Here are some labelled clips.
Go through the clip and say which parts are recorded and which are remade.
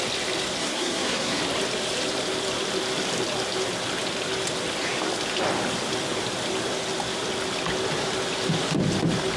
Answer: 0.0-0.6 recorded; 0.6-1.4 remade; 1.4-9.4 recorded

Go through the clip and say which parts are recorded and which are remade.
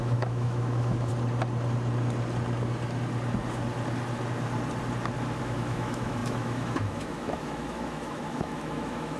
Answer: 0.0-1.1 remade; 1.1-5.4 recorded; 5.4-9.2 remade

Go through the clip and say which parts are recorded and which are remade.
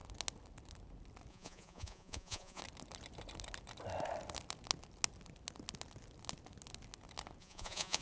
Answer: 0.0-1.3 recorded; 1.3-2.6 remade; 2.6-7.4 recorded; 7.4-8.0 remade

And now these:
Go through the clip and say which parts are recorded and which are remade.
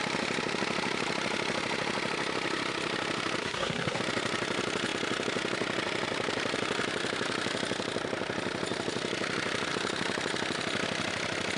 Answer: 0.0-3.4 recorded; 3.4-4.0 remade; 4.0-11.6 recorded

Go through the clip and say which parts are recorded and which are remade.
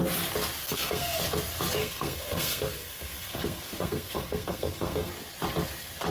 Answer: 0.0-0.6 recorded; 0.6-1.2 remade; 1.2-1.8 recorded; 1.8-5.1 remade; 5.1-6.1 recorded